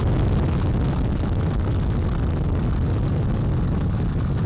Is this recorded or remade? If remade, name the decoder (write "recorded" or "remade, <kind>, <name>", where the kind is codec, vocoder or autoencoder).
recorded